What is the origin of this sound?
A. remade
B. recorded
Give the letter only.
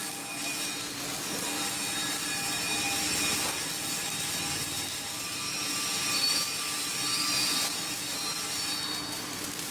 B